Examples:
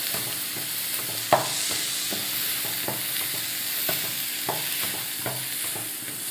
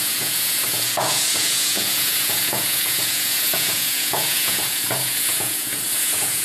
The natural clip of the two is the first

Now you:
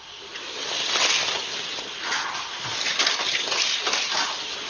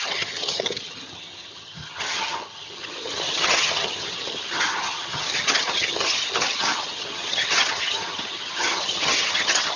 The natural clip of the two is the first